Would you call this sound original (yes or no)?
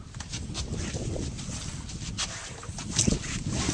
yes